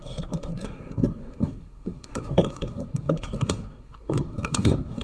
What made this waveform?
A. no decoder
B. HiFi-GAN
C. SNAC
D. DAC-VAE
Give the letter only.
C